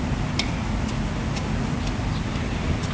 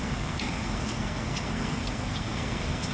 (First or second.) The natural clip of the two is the first